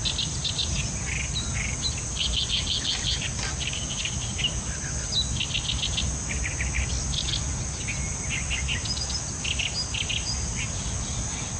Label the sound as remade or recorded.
recorded